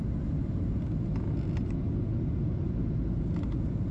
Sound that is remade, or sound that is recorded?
recorded